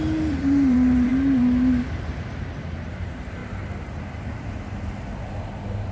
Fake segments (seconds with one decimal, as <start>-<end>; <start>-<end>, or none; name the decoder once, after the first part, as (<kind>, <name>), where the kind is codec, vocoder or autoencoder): 0.0-1.1 (vocoder, BigVGAN v2); 1.8-3.4; 4.5-5.9

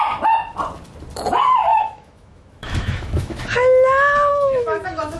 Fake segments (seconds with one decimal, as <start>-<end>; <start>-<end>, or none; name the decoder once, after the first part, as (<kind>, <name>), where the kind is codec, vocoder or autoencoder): 1.7-3.4 (autoencoder, DAC-VAE); 4.3-5.2

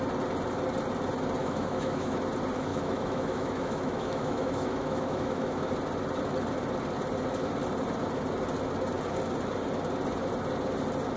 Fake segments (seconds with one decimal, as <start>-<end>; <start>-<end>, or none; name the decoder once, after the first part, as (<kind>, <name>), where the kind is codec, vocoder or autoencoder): 1.4-2.2 (autoencoder, DAC-VAE); 2.7-5.7

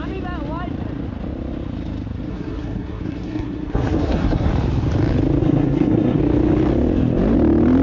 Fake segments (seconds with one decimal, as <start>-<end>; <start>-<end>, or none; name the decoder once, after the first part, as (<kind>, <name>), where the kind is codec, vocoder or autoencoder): 2.3-4.5 (codec, SNAC); 5.4-6.2

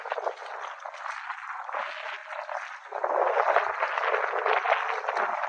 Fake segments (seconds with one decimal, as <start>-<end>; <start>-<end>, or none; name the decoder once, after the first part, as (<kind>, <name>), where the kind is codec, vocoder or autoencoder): none

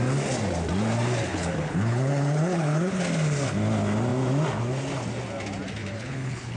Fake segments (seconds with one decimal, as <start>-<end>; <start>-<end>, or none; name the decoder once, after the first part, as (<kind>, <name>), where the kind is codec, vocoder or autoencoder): 1.3-3.0 (codec, HILCodec); 5.8-6.6